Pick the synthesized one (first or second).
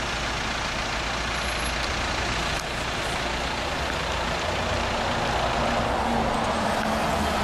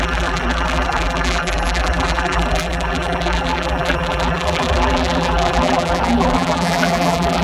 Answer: second